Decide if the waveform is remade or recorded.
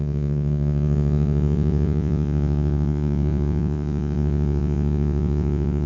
remade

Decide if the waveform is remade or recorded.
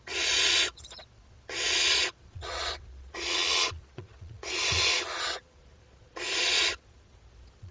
remade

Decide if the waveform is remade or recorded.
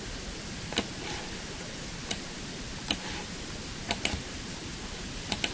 recorded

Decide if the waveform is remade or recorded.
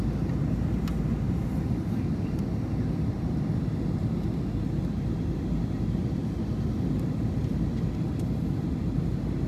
recorded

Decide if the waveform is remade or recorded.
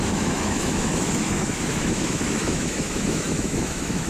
remade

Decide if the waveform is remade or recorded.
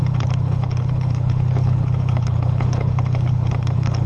remade